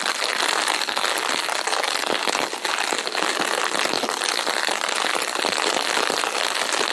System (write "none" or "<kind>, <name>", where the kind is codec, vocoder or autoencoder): none